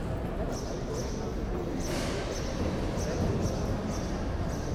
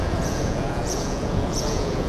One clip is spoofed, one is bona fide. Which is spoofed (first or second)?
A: second